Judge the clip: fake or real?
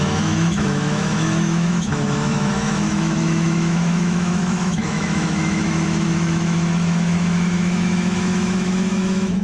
fake